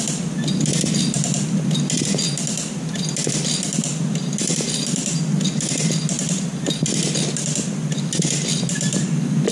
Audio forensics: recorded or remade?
recorded